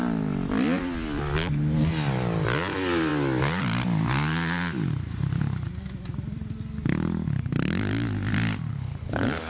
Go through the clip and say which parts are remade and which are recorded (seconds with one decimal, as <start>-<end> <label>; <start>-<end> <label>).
0.0-8.7 recorded; 8.7-9.5 remade